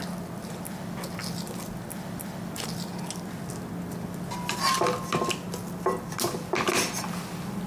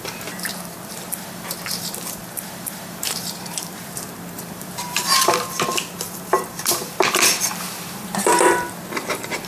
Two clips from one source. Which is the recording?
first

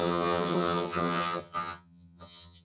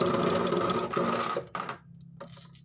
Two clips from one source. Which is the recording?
second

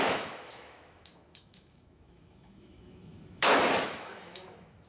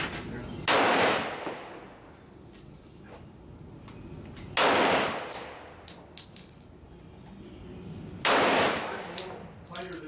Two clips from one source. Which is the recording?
second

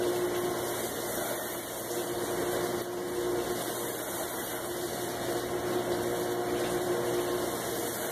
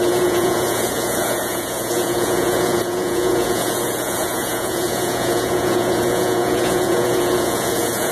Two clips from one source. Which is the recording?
first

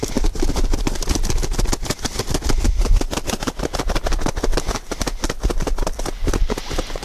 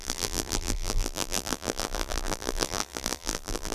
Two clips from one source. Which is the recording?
first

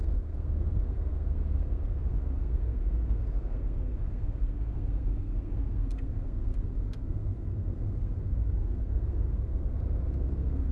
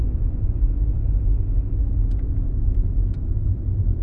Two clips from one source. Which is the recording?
second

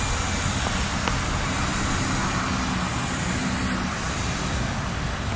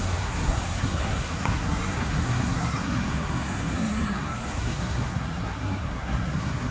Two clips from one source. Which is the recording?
first